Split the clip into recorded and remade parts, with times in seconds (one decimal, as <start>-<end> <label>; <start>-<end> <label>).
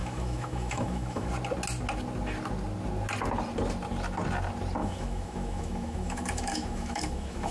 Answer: 0.0-1.3 remade; 1.3-4.8 recorded; 4.8-7.5 remade